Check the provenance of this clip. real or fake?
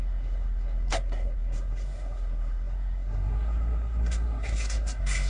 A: fake